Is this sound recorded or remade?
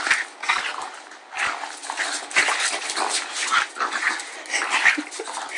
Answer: recorded